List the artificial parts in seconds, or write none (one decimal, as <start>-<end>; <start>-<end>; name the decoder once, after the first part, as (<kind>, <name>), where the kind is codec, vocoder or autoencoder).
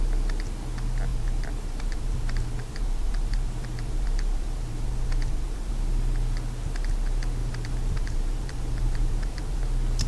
1.1-5.7 (vocoder, BigVGAN v2); 7.4-9.6